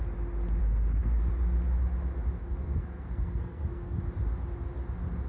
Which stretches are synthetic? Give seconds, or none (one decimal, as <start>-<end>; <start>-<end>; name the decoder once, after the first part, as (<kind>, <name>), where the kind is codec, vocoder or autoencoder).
0.6-1.3 (codec, SNAC); 2.4-4.0